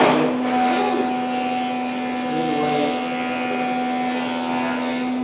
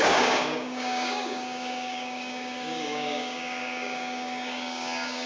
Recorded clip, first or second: first